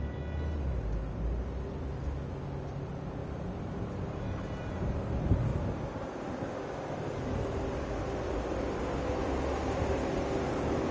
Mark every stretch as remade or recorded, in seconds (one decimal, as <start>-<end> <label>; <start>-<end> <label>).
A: 0.0-3.2 recorded; 3.2-3.8 remade; 3.8-5.5 recorded; 5.5-7.2 remade; 7.2-10.9 recorded